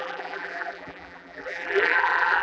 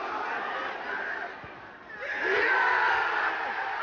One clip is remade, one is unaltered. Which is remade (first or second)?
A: first